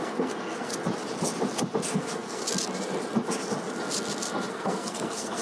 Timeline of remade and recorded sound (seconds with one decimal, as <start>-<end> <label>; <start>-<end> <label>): 0.0-0.7 remade; 0.7-1.9 recorded; 1.9-2.4 remade; 2.4-4.5 recorded; 4.5-5.4 remade